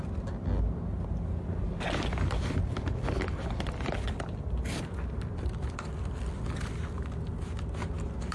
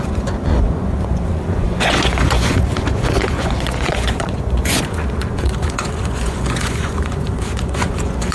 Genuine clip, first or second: first